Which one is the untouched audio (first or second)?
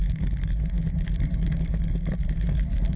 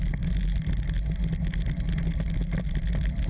second